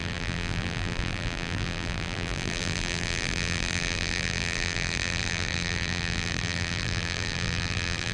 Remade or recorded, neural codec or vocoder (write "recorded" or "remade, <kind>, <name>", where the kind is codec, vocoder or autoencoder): remade, vocoder, BigVGAN v2